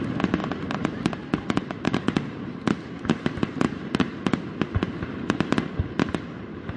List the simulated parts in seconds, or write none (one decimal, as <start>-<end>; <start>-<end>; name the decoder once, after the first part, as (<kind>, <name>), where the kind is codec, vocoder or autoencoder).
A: 0.4-4.5 (vocoder, BigVGAN v2)